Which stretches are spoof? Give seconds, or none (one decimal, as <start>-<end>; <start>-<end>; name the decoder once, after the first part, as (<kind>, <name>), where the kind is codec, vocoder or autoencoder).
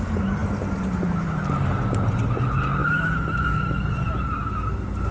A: 2.8-3.8 (autoencoder, DAC-VAE)